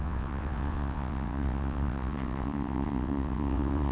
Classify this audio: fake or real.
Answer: fake